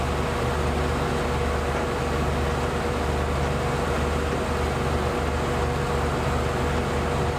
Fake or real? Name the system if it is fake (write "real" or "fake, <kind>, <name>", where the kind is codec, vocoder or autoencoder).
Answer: real